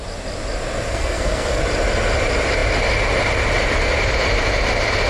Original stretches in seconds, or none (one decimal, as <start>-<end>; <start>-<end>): 0.0-0.9; 1.6-5.1